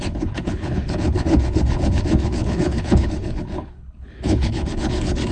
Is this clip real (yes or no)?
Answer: no